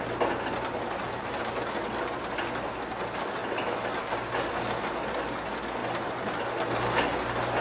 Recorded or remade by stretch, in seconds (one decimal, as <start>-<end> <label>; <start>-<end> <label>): 0.0-5.8 recorded; 5.8-6.4 remade; 6.4-7.6 recorded